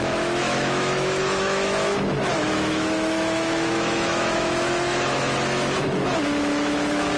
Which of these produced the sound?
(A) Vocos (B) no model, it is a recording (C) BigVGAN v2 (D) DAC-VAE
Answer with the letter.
D